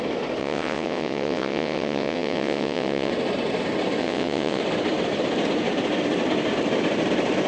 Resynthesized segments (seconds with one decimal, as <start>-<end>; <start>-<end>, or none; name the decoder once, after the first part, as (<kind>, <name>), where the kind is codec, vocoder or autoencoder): 0.4-3.1 (vocoder, WaveNeXt); 4.0-4.6